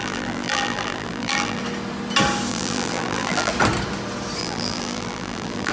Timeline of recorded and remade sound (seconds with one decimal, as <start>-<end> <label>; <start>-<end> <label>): 0.0-1.6 remade; 1.6-2.5 recorded; 2.5-3.5 remade; 3.5-4.4 recorded; 4.4-5.7 remade